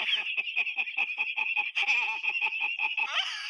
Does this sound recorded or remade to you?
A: recorded